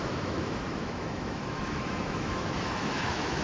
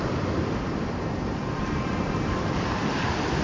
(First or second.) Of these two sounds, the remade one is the first